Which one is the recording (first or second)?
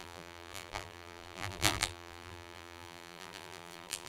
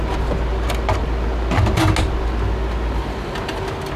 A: second